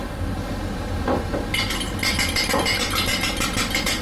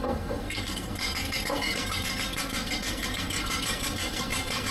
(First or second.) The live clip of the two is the first